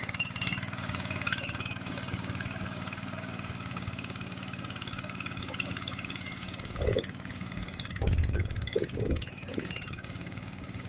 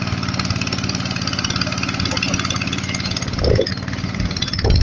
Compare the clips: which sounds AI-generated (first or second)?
first